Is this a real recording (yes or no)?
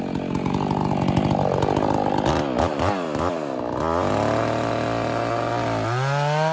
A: yes